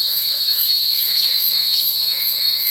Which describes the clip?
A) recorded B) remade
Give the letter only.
B